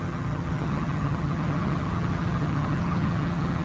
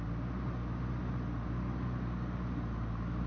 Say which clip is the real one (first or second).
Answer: second